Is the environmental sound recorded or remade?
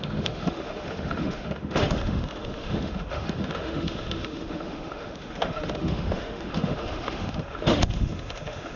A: remade